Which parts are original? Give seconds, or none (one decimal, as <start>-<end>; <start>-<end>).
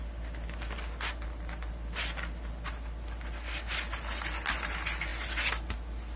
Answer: 0.0-6.2